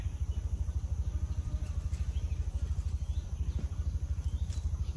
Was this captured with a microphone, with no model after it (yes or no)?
no